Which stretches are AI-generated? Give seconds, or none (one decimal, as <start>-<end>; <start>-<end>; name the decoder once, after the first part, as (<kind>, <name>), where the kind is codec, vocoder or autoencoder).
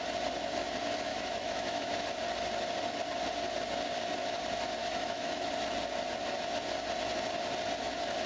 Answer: 1.1-1.9 (autoencoder, DAC-VAE); 4.8-5.5